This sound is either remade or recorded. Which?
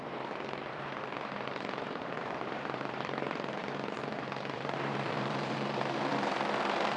remade